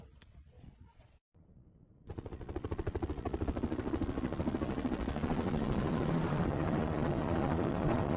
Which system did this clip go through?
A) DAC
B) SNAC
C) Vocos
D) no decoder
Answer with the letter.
C